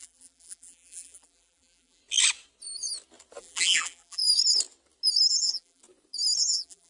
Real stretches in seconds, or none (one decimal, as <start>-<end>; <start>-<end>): 2.0-3.4; 4.2-5.3; 5.8-6.4